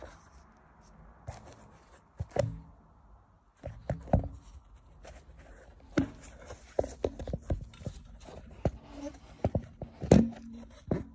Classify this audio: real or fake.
real